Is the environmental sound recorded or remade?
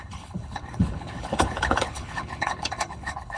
remade